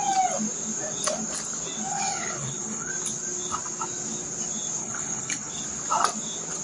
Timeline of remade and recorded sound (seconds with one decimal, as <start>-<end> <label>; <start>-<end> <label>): 0.0-1.9 recorded; 1.9-2.9 remade; 2.9-4.8 recorded; 4.8-5.5 remade; 5.5-6.6 recorded